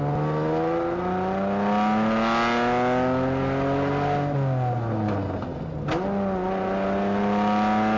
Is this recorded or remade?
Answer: recorded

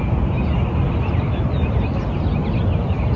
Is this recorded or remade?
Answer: recorded